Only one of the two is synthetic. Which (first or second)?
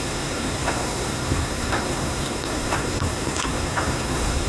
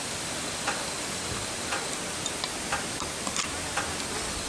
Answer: first